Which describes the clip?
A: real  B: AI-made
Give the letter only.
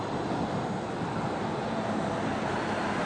A